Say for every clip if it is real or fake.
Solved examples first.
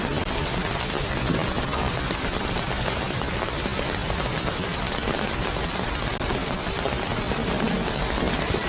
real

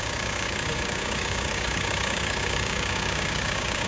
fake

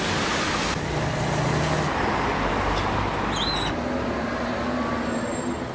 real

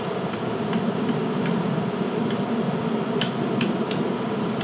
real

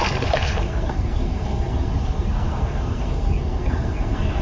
fake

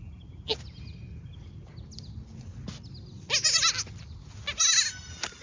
real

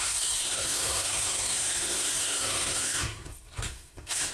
fake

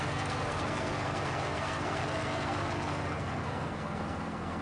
fake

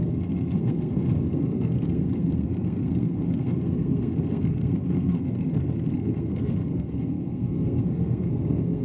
fake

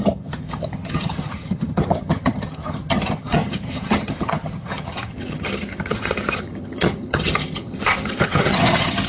fake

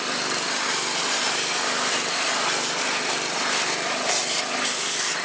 real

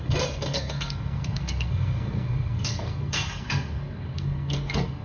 fake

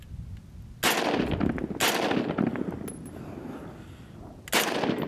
real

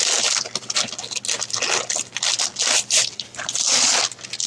real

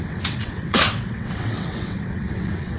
fake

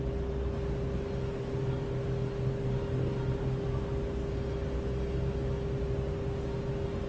real